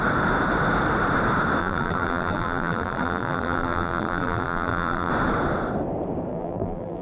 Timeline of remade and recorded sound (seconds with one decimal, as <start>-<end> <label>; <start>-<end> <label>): 0.0-1.6 recorded; 1.6-5.1 remade; 5.1-6.3 recorded; 6.3-7.0 remade